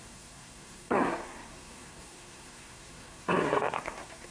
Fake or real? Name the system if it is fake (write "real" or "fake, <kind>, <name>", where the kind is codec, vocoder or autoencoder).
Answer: fake, codec, SNAC